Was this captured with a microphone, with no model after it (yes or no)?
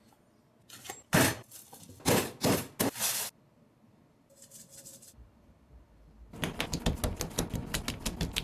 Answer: yes